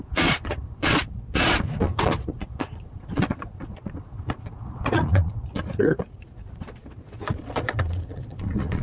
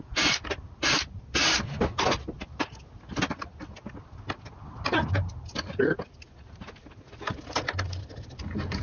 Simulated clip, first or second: first